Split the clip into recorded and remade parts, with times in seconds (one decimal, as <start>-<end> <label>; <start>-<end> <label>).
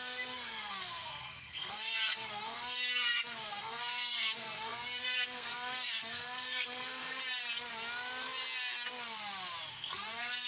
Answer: 0.0-7.2 remade; 7.2-9.7 recorded; 9.7-10.5 remade